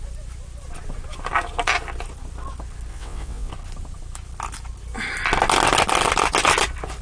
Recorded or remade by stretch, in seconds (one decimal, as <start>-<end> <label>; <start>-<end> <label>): 0.0-2.9 recorded; 2.9-3.5 remade; 3.5-7.0 recorded